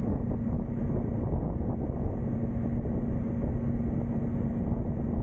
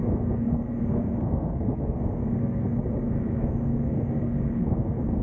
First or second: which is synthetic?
second